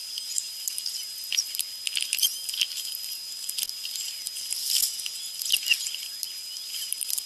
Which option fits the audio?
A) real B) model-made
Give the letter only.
A